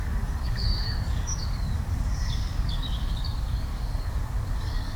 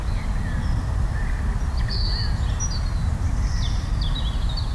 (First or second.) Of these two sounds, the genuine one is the second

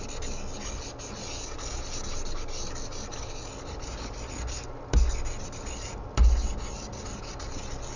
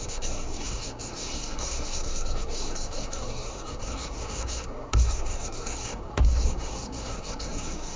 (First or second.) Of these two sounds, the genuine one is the first